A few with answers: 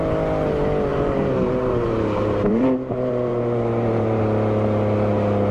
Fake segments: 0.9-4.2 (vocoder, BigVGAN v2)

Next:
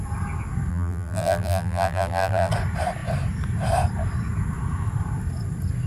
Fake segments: 0.7-2.5 (vocoder, BigVGAN v2)

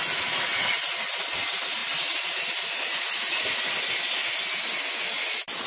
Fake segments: none

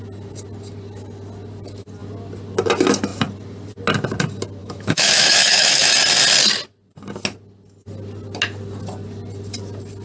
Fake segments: 4.6-5.9 (autoencoder, DAC-VAE)

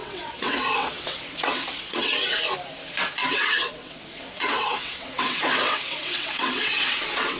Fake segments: 0.0-2.4 (vocoder, WaveNeXt); 3.2-7.4